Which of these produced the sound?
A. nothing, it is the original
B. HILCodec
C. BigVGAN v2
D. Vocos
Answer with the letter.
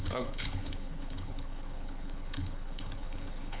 B